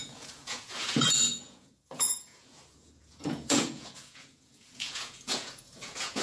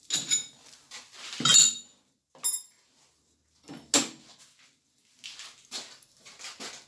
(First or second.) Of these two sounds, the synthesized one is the first